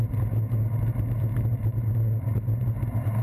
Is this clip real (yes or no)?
yes